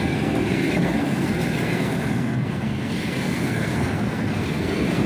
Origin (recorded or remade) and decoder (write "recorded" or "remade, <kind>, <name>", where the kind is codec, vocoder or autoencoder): remade, codec, SNAC